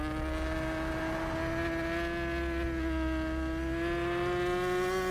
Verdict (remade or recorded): recorded